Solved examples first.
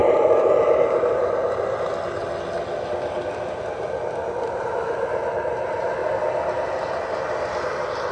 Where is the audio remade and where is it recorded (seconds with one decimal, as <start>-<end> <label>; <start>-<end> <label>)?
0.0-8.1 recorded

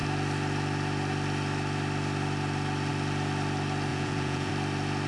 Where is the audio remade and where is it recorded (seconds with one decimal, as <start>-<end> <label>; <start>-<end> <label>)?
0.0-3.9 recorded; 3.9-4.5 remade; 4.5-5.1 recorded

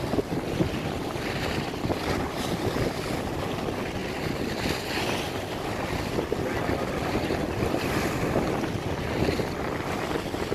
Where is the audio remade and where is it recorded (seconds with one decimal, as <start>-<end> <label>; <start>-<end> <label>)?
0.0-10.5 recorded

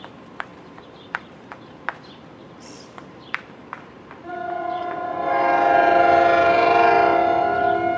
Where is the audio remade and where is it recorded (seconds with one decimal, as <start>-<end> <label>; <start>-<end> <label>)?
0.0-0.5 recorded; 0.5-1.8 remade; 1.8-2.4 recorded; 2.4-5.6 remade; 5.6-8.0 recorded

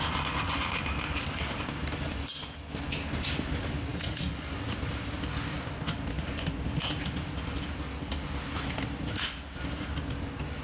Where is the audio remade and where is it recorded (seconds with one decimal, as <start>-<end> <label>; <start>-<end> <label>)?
0.0-3.9 recorded; 3.9-4.5 remade; 4.5-10.6 recorded

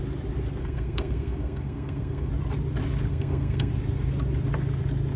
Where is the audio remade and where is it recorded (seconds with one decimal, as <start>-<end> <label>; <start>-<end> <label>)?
0.0-0.6 recorded; 0.6-2.3 remade; 2.3-3.1 recorded; 3.1-3.7 remade; 3.7-5.2 recorded